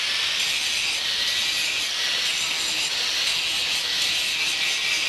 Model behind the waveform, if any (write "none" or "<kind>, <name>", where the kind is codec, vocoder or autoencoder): none